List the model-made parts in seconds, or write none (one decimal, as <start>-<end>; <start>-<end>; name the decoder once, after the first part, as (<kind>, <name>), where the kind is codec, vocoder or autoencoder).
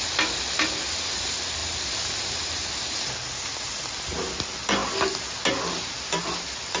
none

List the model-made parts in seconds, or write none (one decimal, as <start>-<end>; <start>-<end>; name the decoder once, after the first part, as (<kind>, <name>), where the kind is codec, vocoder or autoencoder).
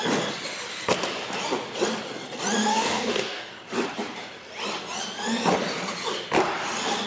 2.7-3.5 (codec, DAC)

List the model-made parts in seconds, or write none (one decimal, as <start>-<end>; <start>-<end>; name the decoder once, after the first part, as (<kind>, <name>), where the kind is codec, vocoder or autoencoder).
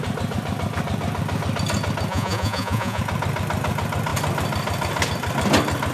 2.1-3.0 (vocoder, Vocos)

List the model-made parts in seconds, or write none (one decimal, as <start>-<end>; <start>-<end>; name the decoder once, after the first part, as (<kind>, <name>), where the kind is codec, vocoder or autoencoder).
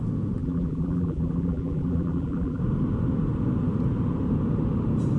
0.4-2.6 (vocoder, BigVGAN v2)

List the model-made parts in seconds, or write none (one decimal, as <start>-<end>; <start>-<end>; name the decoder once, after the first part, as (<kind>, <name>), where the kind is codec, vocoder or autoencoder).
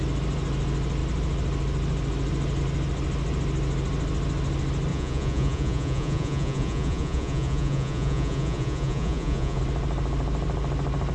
4.9-9.6 (vocoder, Vocos)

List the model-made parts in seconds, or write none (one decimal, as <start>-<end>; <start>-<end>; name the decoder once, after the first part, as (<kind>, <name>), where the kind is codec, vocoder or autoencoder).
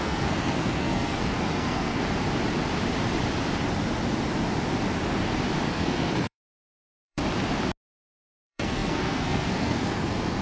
0.0-2.0 (codec, SNAC); 5.7-7.2; 8.4-10.4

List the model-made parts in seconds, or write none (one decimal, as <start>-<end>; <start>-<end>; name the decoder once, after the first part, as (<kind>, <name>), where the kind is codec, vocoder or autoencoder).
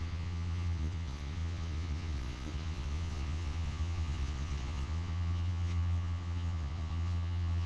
0.0-7.7 (vocoder, Vocos)